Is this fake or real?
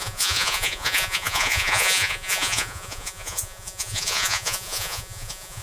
fake